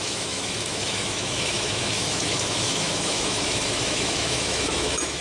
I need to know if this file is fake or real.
fake